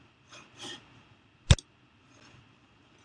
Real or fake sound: real